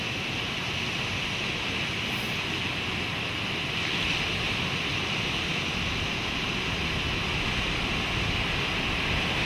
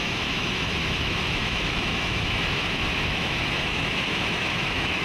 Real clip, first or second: first